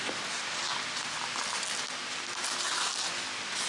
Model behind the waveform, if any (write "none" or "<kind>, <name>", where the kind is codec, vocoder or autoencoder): none